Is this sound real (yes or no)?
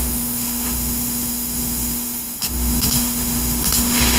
no